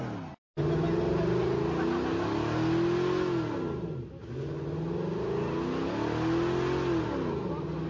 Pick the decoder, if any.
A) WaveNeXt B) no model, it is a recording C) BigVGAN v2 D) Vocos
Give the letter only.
B